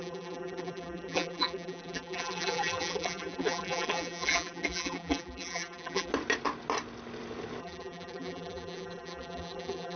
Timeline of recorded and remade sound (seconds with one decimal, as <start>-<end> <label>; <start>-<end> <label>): 0.0-6.1 remade; 6.1-7.6 recorded; 7.6-10.0 remade